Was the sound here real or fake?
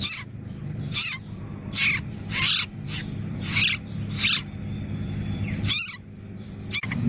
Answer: fake